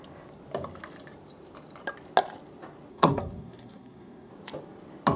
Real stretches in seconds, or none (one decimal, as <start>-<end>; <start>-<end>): 0.0-2.9; 4.3-5.2